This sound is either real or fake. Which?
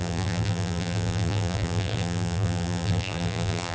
fake